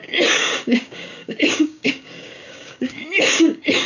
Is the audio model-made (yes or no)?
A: yes